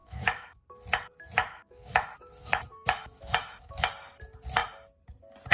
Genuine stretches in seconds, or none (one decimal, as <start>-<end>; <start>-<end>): 0.6-1.4; 3.9-5.5